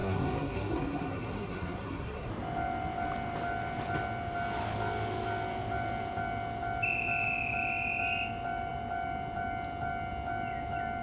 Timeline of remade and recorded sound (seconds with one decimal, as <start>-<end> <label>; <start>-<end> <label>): 0.0-2.3 remade; 2.3-11.0 recorded

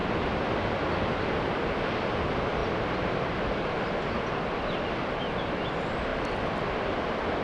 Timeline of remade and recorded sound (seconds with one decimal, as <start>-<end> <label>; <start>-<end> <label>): 0.0-7.4 recorded

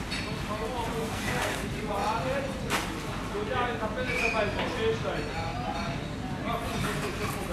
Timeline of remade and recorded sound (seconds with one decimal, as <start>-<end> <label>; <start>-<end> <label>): 0.0-1.0 recorded; 1.0-1.6 remade; 1.6-7.5 recorded

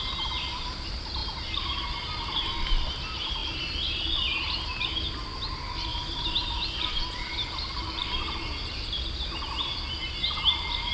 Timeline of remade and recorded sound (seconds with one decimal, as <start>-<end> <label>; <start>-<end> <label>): 0.0-10.9 recorded

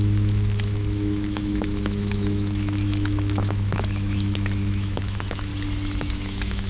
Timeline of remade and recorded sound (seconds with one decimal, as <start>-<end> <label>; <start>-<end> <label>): 0.0-5.5 remade; 5.5-6.0 recorded; 6.0-6.7 remade

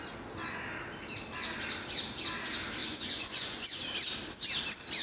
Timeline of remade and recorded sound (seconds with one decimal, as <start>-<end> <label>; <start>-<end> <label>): 0.0-2.8 recorded; 2.8-3.8 remade; 3.8-5.0 recorded